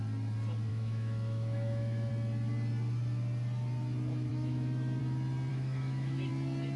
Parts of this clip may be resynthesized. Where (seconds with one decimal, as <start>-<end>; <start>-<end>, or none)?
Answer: 0.7-2.1; 4.3-5.0; 5.5-6.3